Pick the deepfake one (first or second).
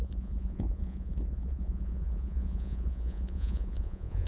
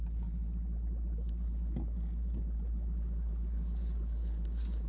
first